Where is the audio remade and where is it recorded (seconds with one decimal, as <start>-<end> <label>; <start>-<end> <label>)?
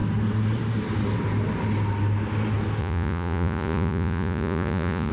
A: 0.0-2.8 recorded; 2.8-5.1 remade